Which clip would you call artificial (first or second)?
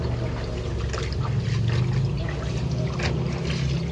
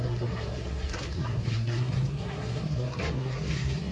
second